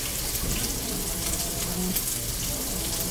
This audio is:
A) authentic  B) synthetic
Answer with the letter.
A